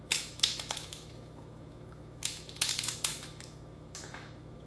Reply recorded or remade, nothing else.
remade